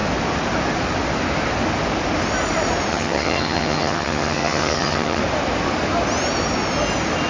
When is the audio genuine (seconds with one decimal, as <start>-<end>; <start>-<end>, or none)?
0.0-2.9; 5.2-7.3